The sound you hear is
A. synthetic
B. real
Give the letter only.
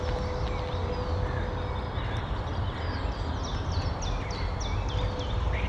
B